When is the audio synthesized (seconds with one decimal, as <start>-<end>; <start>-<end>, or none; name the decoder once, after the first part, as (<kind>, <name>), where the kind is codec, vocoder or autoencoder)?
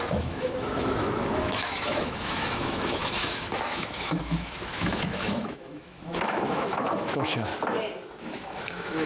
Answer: 0.0-7.5 (autoencoder, DAC-VAE); 8.2-9.1